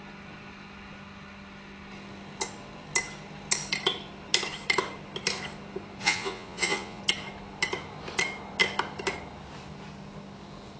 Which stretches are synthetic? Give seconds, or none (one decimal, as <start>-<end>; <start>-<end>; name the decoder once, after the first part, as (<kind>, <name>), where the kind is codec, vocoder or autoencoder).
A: 6.0-7.0 (vocoder, Vocos)